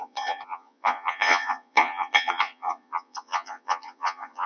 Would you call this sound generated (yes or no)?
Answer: yes